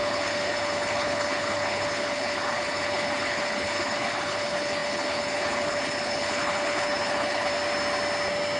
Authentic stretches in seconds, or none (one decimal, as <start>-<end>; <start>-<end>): 7.5-8.6